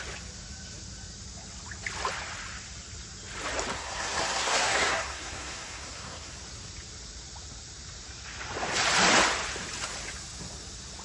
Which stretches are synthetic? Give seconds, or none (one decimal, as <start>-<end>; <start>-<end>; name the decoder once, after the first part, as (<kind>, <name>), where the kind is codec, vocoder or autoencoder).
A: 3.7-6.3 (codec, SNAC)